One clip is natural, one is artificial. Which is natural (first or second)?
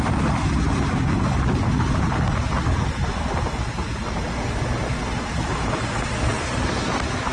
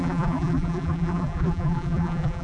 first